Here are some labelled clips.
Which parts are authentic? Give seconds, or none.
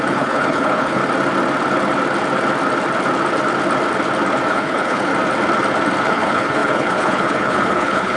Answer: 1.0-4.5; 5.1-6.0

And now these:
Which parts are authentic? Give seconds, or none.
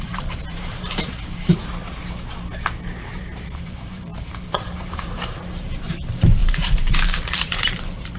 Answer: 1.6-3.1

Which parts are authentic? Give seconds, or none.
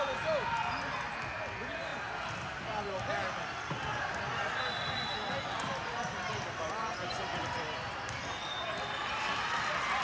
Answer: 0.0-6.8; 7.4-10.0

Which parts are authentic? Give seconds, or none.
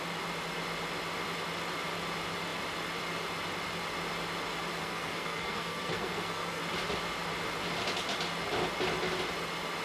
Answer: 0.0-4.8; 6.6-9.8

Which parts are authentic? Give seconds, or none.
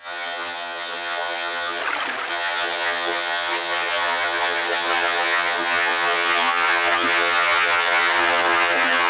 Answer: 1.8-2.3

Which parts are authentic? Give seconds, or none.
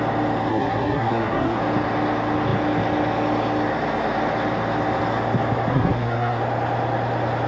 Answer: 0.0-0.5; 1.6-5.7; 6.4-7.5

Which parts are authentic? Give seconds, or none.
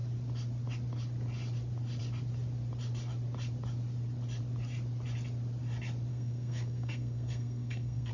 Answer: 0.0-6.1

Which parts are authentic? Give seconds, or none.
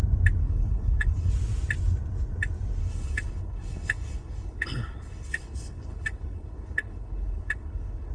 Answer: 0.0-0.4; 1.3-2.8